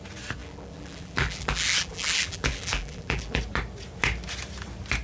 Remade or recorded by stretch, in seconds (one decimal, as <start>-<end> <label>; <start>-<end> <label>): 0.0-0.4 recorded; 0.4-3.4 remade; 3.4-5.0 recorded